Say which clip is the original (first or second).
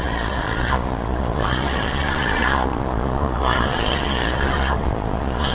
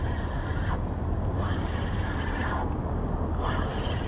second